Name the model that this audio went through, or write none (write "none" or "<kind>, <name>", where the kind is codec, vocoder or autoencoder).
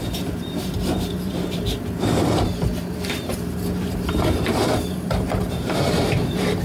vocoder, BigVGAN v2